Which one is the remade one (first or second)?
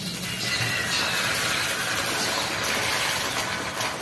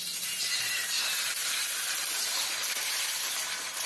second